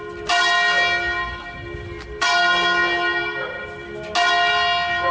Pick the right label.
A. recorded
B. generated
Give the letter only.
A